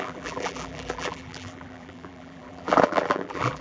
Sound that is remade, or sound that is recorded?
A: remade